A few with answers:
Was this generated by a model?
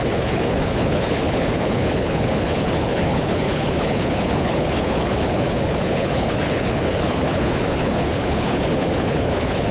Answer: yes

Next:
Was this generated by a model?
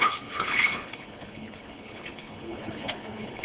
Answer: yes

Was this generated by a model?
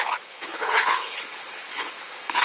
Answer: yes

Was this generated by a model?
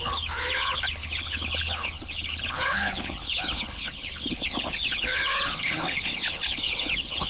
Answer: yes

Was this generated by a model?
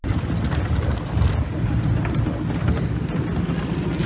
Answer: no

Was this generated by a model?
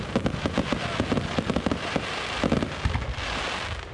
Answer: no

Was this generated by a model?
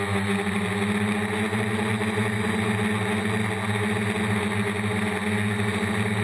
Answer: no